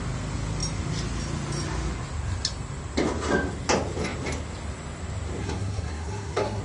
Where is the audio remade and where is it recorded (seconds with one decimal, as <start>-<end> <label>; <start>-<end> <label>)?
0.0-5.4 recorded; 5.4-6.6 remade